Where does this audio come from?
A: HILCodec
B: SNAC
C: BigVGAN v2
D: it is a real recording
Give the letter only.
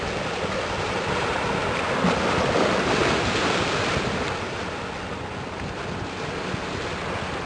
D